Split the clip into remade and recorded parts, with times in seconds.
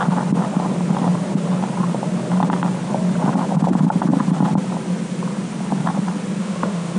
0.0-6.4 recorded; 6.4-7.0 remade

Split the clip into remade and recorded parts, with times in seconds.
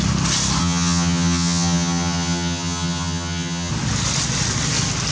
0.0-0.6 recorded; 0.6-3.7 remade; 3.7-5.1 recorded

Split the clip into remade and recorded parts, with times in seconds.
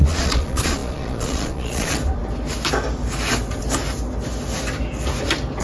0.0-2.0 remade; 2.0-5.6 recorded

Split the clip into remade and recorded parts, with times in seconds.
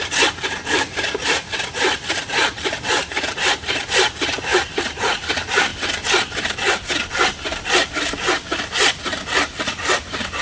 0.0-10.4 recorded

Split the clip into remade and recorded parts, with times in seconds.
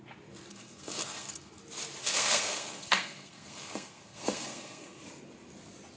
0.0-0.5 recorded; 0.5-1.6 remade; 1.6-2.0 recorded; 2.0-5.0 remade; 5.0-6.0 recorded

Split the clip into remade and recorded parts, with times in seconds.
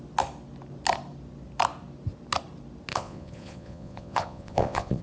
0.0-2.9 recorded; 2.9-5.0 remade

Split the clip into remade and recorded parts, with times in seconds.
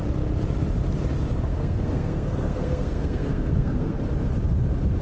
0.0-1.5 recorded; 1.5-4.0 remade; 4.0-5.0 recorded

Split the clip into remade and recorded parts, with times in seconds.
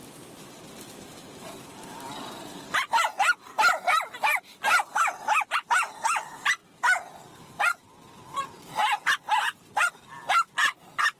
0.0-2.4 remade; 2.4-11.2 recorded